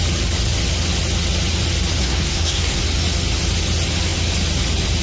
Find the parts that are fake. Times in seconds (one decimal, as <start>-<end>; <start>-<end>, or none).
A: 2.0-2.8